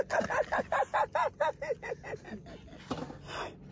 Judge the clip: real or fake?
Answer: real